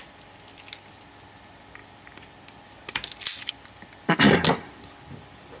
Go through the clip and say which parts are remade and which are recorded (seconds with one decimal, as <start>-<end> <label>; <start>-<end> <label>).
0.0-5.6 recorded